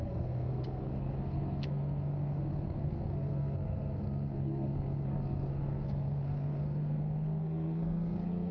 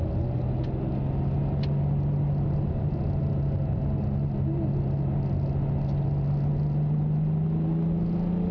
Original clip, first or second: second